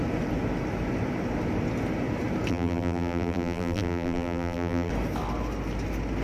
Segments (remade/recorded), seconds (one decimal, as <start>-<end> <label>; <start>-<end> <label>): 0.0-2.5 recorded; 2.5-4.9 remade; 4.9-6.2 recorded